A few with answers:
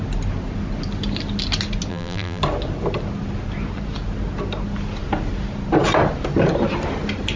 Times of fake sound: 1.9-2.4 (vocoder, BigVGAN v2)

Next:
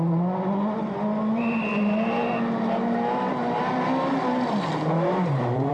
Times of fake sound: 1.7-3.6 (vocoder, BigVGAN v2); 4.7-5.7

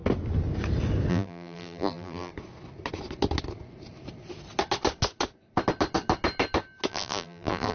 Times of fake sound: 1.1-2.3 (vocoder, BigVGAN v2); 6.9-7.7

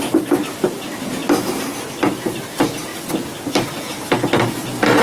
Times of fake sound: 0.0-1.2 (vocoder, BigVGAN v2); 2.0-2.9; 3.8-5.0

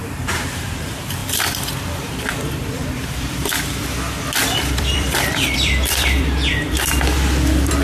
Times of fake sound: 0.0-3.4 (vocoder, BigVGAN v2); 4.6-7.8

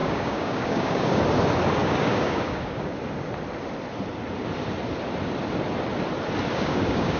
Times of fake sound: 0.0-1.2 (codec, DAC); 1.8-2.9; 6.5-7.2

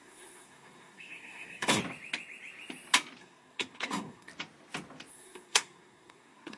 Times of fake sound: 0.0-1.8 (codec, SNAC); 3.2-4.3; 5.1-6.6